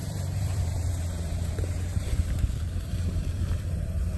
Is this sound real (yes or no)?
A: no